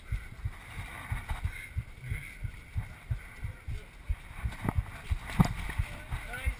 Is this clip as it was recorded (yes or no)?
yes